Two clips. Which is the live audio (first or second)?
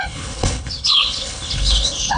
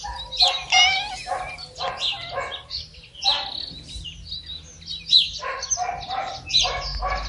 second